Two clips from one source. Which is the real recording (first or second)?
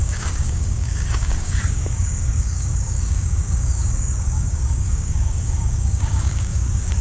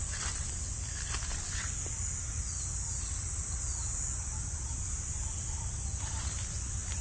second